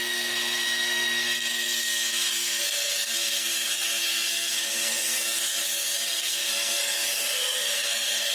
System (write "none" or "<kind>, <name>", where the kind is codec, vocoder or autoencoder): codec, SNAC